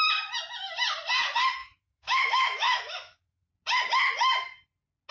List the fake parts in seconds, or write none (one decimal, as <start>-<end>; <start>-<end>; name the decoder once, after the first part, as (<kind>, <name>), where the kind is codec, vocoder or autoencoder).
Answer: 1.6-3.5 (autoencoder, DAC-VAE)